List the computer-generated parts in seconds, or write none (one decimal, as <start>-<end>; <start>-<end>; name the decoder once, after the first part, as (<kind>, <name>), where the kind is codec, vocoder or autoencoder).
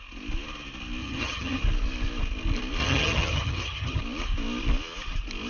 1.0-1.6 (vocoder, HiFi-GAN); 2.8-4.0